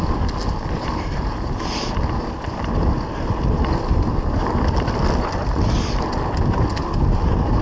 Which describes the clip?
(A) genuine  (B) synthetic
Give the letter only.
A